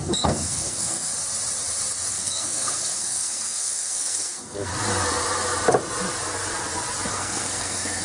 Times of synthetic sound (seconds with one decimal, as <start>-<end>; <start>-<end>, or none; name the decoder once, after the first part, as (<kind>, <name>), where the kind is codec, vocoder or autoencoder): 0.0-1.1 (codec, SNAC); 2.1-4.7; 7.1-8.0